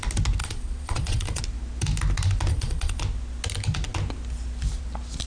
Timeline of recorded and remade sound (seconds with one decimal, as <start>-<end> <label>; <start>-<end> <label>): 0.0-0.4 recorded; 0.4-1.4 remade; 1.4-2.5 recorded; 2.5-3.0 remade; 3.0-5.3 recorded